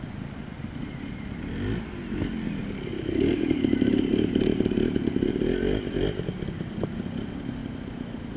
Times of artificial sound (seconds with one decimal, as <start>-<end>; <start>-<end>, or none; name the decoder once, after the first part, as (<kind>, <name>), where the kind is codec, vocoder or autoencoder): 2.6-5.3 (vocoder, BigVGAN v2)

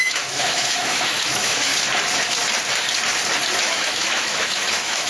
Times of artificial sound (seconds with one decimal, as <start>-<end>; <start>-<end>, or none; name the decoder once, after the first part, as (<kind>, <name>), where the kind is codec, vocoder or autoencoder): 0.0-1.7 (autoencoder, DAC-VAE); 3.6-5.1

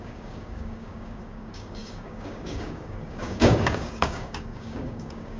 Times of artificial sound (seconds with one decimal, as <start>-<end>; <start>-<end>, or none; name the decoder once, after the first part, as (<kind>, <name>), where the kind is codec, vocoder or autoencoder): 0.0-5.4 (codec, DAC)

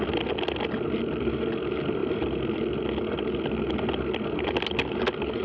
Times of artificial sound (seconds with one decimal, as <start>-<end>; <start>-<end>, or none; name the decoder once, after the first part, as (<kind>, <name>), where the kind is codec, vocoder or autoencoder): none